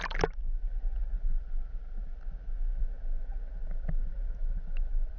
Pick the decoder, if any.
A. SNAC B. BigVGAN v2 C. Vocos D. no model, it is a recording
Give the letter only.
D